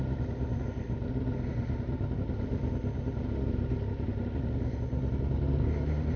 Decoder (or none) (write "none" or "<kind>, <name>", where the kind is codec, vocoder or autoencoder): none